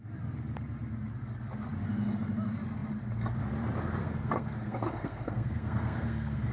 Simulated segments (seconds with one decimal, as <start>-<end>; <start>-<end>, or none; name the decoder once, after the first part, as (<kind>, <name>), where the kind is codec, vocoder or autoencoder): 4.0-6.5 (codec, SNAC)